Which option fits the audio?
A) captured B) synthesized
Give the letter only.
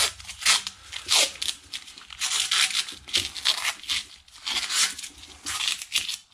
A